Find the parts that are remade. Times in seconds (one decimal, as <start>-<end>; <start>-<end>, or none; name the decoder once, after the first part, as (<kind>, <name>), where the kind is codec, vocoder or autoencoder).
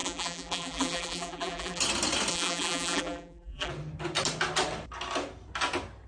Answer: 0.0-1.8 (vocoder, BigVGAN v2); 2.3-3.7